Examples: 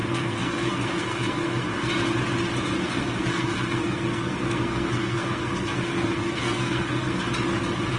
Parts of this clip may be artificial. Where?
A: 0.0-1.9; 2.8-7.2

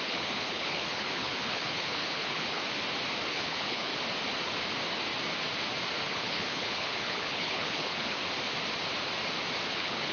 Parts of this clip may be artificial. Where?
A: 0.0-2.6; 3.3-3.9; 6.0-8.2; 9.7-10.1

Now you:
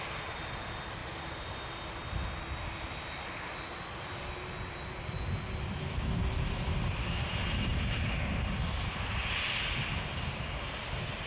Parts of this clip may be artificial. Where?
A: none

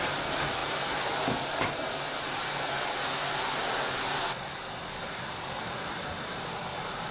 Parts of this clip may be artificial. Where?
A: none

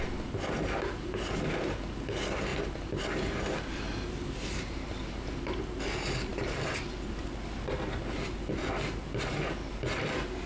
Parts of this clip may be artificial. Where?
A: none